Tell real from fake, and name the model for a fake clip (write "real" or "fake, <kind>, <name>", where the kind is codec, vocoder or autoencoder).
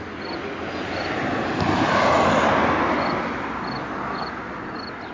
real